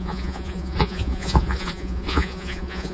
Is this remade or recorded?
remade